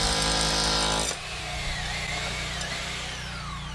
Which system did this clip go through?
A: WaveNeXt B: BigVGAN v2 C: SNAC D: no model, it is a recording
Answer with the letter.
D